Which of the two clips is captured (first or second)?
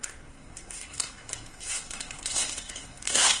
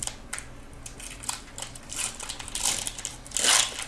second